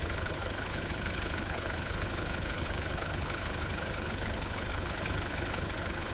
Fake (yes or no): yes